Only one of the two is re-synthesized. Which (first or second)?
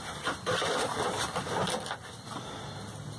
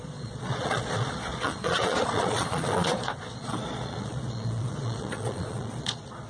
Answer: second